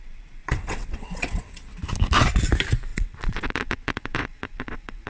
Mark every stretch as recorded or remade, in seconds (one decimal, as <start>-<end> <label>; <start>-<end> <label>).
0.0-0.4 recorded; 0.4-1.6 remade; 1.6-2.9 recorded; 2.9-5.1 remade